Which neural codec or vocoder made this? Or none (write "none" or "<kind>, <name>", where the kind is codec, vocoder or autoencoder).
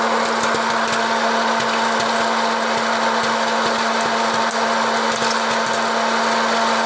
none